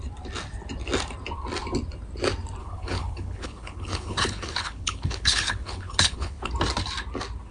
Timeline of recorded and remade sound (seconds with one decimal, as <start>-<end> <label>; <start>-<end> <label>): 0.0-2.6 recorded; 2.6-6.5 remade; 6.5-7.5 recorded